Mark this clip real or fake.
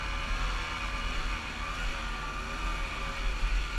real